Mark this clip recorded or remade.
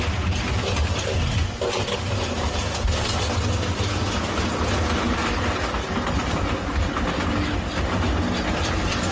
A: recorded